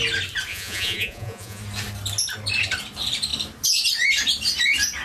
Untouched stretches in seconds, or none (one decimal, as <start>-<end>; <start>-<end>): 0.0-0.5; 1.6-5.0